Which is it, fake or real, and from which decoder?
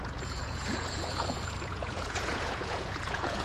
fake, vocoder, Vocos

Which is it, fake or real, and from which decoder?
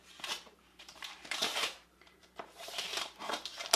fake, vocoder, BigVGAN v2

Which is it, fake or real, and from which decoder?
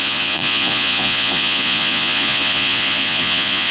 fake, vocoder, Vocos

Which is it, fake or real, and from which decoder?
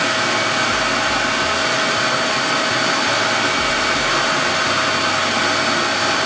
real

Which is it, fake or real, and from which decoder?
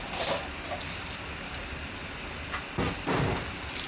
real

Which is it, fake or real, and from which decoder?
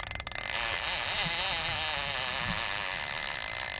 real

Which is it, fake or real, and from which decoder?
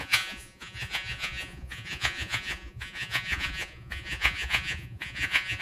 fake, vocoder, Vocos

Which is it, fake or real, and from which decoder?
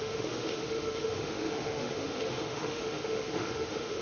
fake, autoencoder, DAC-VAE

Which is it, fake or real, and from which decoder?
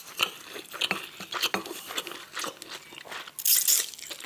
real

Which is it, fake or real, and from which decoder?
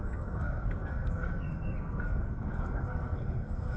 fake, codec, SNAC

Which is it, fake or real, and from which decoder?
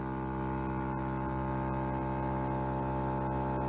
real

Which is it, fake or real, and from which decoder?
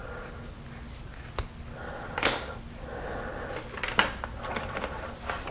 real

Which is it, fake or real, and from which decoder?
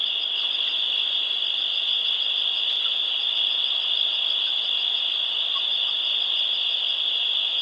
real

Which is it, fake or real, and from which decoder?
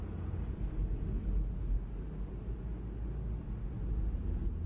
real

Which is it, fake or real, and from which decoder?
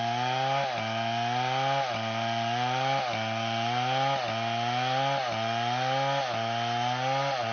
real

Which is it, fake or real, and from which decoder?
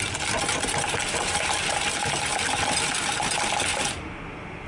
real